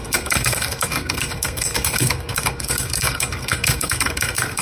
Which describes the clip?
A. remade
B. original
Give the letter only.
A